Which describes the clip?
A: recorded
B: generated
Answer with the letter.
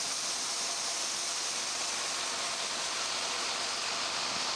A